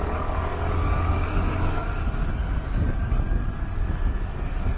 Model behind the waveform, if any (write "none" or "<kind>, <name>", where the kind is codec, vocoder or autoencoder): codec, DAC